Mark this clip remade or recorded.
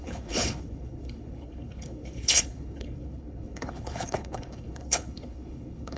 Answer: remade